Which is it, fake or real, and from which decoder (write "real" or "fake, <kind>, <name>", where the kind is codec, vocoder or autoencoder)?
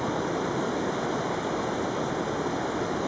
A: real